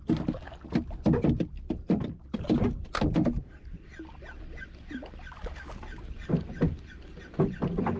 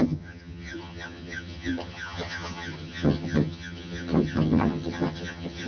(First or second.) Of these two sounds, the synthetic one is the second